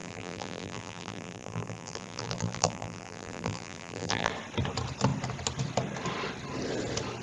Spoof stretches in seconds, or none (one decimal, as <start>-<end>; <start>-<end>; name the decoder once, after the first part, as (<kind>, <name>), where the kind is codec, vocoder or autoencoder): 0.0-4.3 (vocoder, BigVGAN v2)